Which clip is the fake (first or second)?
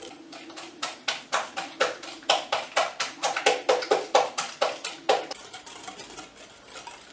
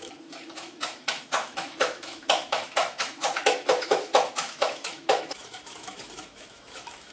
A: second